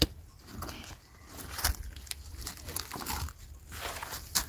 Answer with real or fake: real